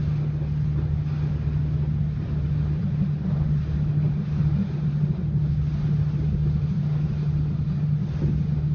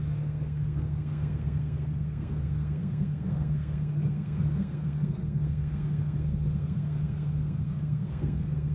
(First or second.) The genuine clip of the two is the first